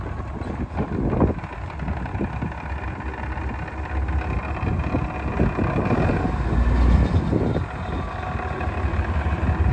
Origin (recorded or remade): recorded